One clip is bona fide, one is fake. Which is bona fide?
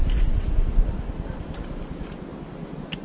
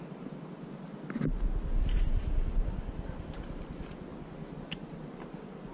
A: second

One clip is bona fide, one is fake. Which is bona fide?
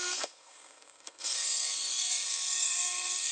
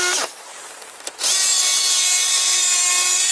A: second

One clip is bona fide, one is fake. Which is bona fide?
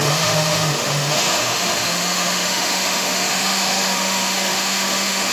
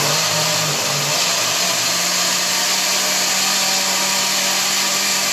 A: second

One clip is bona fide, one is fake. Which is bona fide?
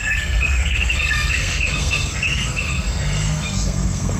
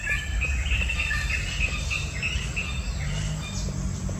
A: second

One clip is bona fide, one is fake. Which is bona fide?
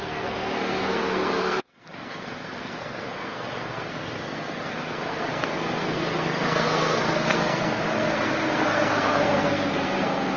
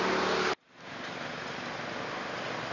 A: second